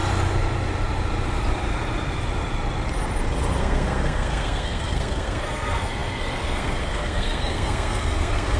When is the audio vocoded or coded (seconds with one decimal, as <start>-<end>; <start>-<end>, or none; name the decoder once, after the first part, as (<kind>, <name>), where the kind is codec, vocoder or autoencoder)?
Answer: 3.6-8.6 (codec, SNAC)

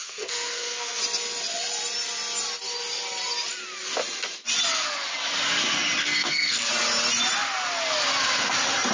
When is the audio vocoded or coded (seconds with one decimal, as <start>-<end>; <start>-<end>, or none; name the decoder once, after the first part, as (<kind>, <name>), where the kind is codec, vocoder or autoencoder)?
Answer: 0.0-1.0 (codec, SNAC); 6.0-6.7

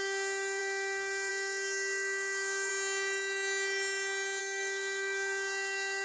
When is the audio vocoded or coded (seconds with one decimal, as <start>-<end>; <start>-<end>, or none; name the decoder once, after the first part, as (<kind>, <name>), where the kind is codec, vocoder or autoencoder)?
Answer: 0.0-2.7 (codec, SNAC); 4.4-6.0

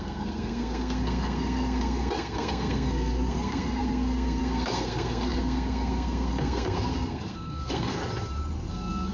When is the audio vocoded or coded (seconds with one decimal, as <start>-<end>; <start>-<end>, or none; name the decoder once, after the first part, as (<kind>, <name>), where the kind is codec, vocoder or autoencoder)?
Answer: 0.0-8.0 (codec, SNAC); 8.7-9.1

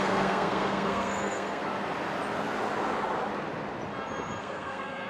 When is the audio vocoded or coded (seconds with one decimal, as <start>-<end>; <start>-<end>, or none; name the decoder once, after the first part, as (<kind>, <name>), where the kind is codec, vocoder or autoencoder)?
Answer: 0.0-1.6 (codec, SNAC); 4.4-5.1

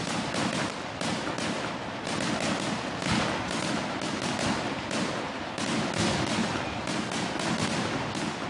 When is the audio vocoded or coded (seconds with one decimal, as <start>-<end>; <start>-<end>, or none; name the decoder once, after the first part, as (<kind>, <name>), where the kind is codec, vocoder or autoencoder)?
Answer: none

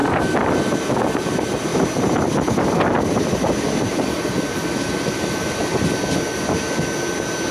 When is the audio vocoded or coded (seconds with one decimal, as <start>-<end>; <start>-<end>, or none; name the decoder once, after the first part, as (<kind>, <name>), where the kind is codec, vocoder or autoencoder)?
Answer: none